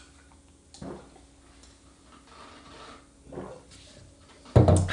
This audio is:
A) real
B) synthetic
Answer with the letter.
A